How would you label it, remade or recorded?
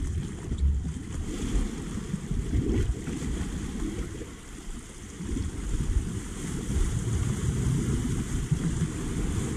remade